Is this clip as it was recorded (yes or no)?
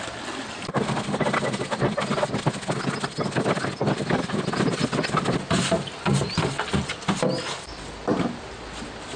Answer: yes